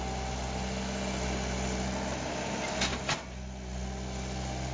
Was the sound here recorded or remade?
recorded